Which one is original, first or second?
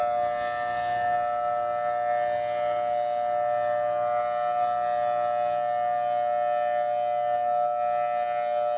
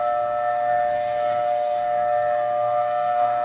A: first